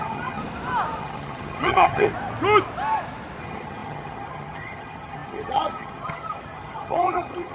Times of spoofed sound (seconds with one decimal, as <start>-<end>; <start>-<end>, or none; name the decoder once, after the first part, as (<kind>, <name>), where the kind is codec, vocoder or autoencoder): 0.0-0.4 (vocoder, HiFi-GAN); 1.0-2.1; 3.4-7.5